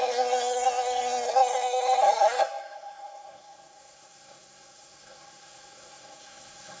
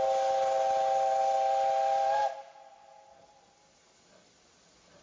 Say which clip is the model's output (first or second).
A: first